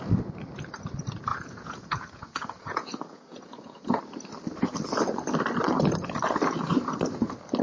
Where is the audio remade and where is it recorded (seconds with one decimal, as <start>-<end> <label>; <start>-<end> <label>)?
0.0-1.3 recorded; 1.3-4.0 remade; 4.0-7.6 recorded